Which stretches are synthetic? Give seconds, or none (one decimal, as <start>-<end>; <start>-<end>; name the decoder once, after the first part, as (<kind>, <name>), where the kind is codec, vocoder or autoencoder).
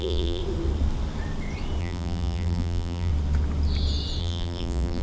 0.0-0.4 (vocoder, BigVGAN v2); 1.8-3.1; 4.2-5.0